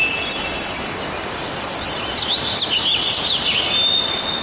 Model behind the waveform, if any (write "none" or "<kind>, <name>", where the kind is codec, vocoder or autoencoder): none